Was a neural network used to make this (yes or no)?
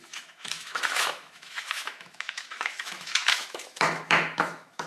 yes